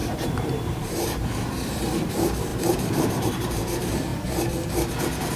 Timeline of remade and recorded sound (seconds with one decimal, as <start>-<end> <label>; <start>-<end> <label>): 0.0-4.1 remade; 4.1-5.4 recorded